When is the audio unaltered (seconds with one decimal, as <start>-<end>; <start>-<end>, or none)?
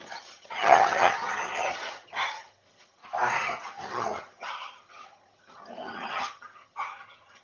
3.0-3.7